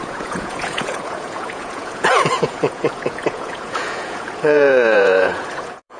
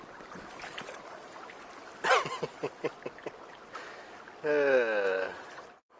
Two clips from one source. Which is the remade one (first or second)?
first